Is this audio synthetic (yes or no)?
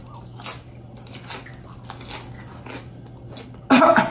no